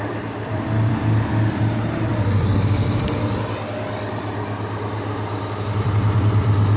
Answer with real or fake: fake